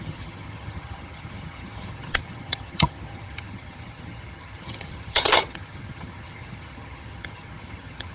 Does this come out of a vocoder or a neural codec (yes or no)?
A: yes